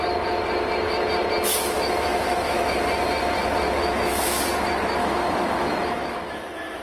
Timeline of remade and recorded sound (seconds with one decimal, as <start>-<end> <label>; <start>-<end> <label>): 0.0-1.5 recorded; 1.5-2.7 remade; 2.7-3.8 recorded; 3.8-4.4 remade; 4.4-5.0 recorded; 5.0-6.8 remade